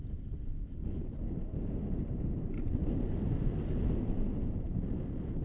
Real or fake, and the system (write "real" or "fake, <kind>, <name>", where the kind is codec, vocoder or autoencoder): real